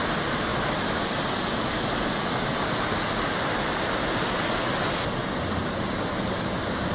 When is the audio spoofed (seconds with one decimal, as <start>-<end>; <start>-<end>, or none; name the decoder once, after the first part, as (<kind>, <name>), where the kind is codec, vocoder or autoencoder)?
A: none